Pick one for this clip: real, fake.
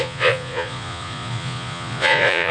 fake